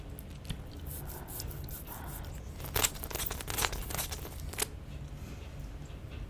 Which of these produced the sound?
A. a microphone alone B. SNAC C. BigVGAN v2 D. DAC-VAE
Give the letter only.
A